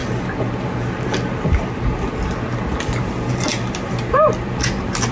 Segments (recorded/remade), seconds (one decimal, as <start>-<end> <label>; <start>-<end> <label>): 0.0-5.1 recorded